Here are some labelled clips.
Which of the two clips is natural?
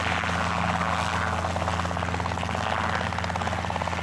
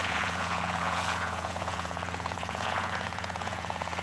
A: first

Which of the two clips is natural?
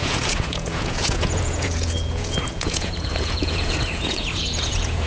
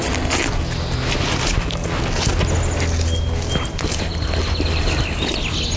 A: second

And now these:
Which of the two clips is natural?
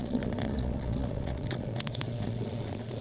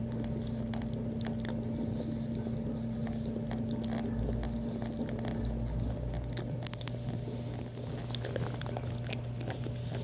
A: second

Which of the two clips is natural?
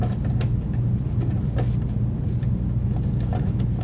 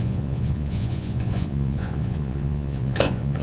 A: first